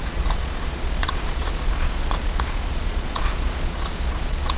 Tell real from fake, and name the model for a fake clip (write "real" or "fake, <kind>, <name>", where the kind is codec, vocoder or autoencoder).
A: fake, vocoder, Vocos